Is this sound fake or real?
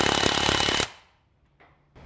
real